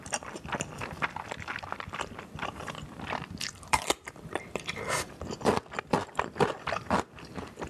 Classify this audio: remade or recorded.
remade